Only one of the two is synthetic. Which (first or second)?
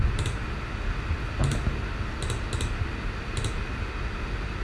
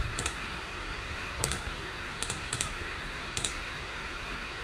second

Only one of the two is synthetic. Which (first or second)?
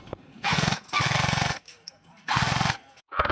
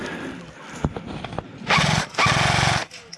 first